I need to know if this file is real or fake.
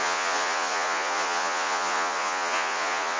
fake